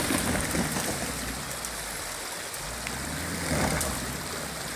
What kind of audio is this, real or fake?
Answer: real